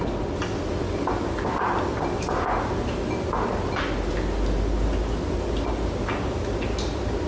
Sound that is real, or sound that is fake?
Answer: real